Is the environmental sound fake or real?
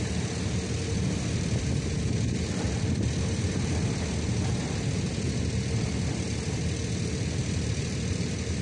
fake